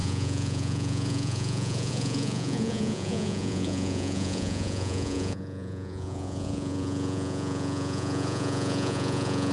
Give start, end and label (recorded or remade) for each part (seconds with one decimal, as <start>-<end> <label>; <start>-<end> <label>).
0.0-9.5 remade